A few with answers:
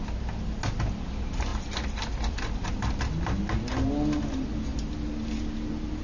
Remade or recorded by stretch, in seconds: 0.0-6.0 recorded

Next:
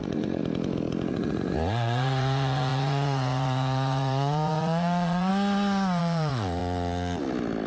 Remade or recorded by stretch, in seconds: 0.0-0.4 remade; 0.4-1.1 recorded; 1.1-5.3 remade; 5.3-6.0 recorded; 6.0-6.6 remade; 6.6-7.7 recorded

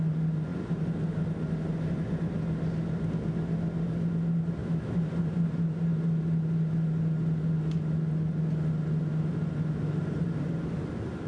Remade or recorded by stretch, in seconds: 0.0-4.6 recorded; 4.6-5.1 remade; 5.1-11.3 recorded

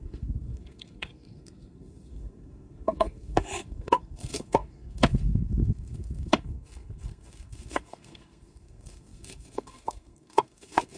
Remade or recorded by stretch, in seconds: 0.0-11.0 remade

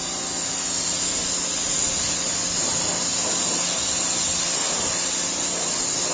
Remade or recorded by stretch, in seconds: 0.0-6.1 recorded

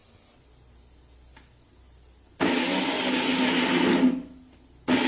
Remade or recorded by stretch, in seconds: 0.0-5.1 recorded

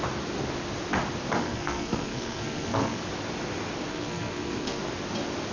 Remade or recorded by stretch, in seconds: 0.0-1.4 recorded; 1.4-3.0 remade; 3.0-3.9 recorded; 3.9-4.8 remade; 4.8-5.5 recorded